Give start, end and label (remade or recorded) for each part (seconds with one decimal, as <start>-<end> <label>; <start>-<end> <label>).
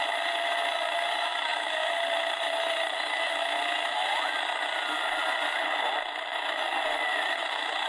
0.0-7.9 recorded